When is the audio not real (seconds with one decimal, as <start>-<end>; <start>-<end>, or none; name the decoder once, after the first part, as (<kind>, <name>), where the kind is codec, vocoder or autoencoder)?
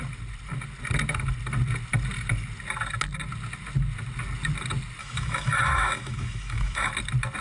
5.0-6.9 (autoencoder, DAC-VAE)